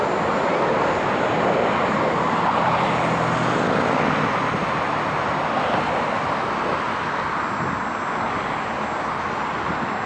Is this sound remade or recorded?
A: recorded